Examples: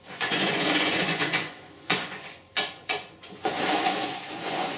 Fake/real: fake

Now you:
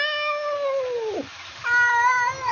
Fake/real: real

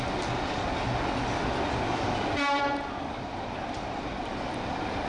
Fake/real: real